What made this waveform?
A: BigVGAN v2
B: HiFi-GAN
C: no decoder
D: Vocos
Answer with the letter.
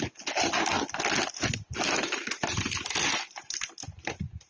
C